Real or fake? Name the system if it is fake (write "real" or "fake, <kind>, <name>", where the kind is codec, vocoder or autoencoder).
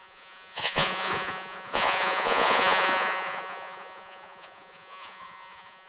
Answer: fake, vocoder, Vocos